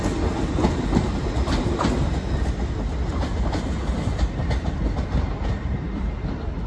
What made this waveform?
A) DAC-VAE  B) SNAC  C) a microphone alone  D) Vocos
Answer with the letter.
C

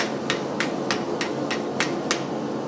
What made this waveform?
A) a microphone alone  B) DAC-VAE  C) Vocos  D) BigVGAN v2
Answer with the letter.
A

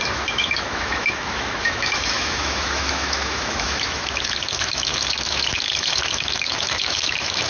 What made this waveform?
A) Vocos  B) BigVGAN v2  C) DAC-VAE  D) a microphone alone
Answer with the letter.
C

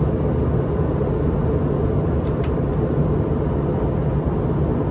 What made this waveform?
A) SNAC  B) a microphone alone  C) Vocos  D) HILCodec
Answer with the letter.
B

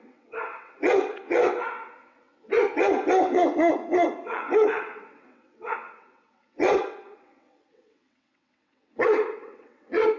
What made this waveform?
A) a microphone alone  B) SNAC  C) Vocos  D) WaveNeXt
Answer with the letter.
D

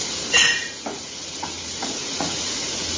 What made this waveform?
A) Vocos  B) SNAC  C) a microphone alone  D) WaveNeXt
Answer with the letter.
A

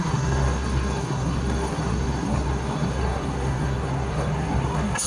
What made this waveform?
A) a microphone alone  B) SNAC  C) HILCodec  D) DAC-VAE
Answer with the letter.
B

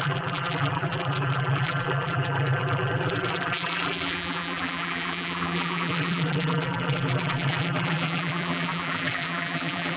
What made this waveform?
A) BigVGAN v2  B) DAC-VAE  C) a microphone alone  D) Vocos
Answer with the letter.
A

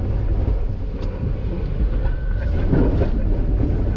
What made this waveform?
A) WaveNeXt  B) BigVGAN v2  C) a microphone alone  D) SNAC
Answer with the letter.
C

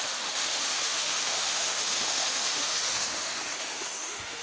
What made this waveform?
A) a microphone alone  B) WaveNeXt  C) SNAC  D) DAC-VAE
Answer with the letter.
D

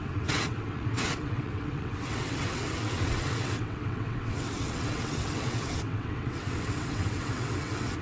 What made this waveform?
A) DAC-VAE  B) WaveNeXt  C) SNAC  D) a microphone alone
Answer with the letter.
B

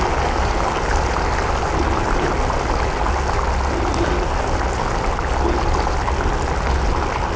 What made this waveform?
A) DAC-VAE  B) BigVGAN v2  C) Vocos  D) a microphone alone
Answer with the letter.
D